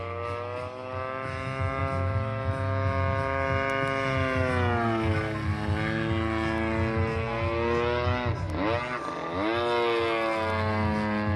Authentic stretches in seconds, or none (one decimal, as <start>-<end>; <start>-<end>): 0.0-11.4